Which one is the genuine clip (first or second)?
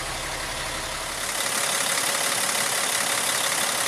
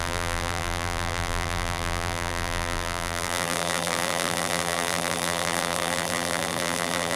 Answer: first